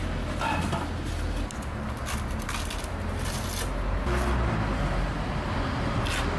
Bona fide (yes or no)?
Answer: yes